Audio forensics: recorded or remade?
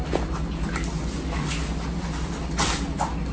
recorded